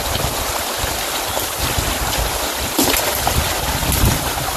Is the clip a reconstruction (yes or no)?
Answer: no